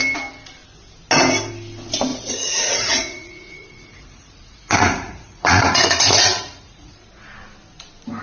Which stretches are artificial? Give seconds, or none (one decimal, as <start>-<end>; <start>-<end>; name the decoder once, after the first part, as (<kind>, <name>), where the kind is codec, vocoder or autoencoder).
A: 2.1-7.0 (vocoder, Vocos)